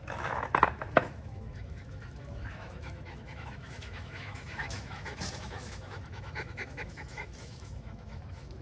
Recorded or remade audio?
remade